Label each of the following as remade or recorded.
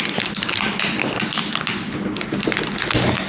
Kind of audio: recorded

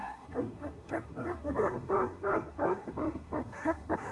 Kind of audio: remade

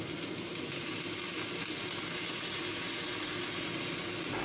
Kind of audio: recorded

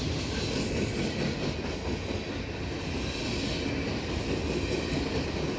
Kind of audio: recorded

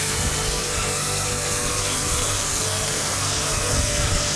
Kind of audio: remade